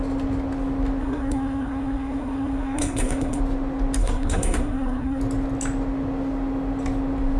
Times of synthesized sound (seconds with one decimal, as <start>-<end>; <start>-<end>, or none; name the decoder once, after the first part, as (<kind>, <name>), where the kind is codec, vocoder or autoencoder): 1.0-3.4 (codec, SNAC); 4.0-5.2